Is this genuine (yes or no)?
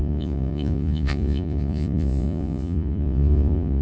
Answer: no